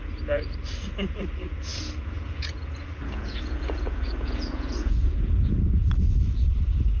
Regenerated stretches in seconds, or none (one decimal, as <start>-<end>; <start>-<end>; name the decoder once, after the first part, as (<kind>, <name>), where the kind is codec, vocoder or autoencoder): 1.7-5.9 (vocoder, Vocos)